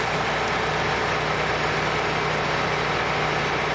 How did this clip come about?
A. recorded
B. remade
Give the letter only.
A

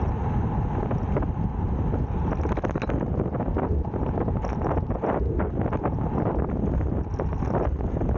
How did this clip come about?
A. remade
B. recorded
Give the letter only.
B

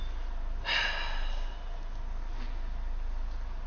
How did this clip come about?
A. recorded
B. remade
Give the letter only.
A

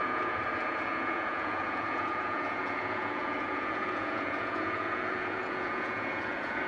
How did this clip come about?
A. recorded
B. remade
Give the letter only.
B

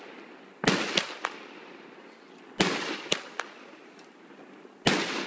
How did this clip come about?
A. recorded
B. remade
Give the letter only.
A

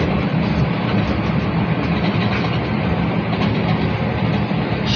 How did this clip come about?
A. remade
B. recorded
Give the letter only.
A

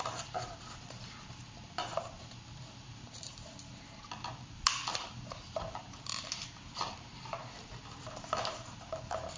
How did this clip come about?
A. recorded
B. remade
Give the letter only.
B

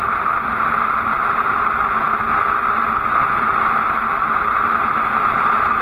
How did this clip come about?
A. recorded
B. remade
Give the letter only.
A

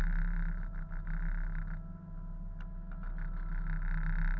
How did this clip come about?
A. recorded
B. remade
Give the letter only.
A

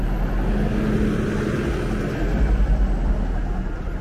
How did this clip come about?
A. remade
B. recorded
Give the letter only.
B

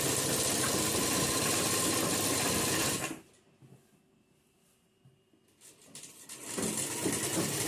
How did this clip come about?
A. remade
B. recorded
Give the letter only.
B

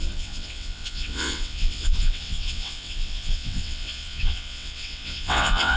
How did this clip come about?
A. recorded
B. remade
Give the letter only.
B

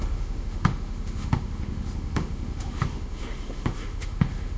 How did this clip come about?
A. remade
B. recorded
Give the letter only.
A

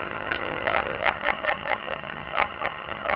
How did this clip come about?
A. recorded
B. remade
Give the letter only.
B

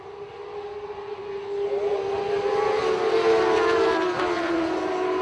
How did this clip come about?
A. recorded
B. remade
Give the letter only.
A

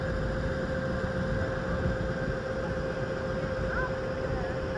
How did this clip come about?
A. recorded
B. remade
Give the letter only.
A